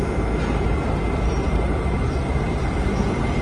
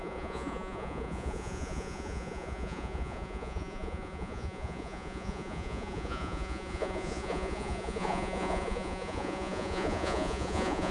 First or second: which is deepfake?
second